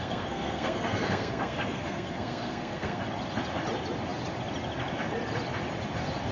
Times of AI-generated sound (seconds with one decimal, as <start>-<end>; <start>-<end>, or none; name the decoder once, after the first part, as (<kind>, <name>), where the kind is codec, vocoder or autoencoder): 0.0-3.0 (codec, SNAC)